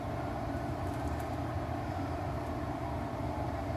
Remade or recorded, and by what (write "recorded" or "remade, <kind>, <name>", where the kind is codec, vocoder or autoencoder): remade, vocoder, BigVGAN v2